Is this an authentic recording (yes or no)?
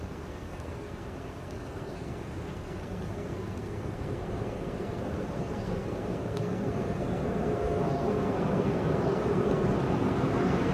no